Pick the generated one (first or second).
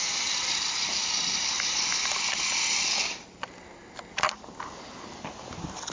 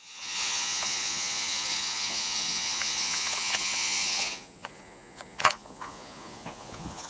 second